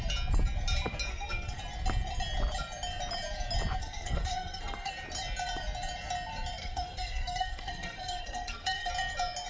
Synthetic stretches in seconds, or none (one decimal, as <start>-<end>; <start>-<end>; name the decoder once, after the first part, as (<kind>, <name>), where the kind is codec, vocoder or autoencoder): 1.1-1.6 (codec, SNAC); 3.8-4.9; 6.6-8.9